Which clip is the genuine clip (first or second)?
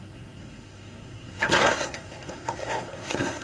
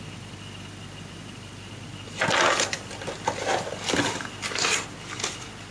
second